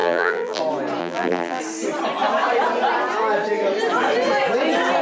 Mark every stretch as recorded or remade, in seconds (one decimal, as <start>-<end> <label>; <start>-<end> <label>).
0.0-0.6 remade; 0.6-1.0 recorded; 1.0-1.6 remade; 1.6-5.0 recorded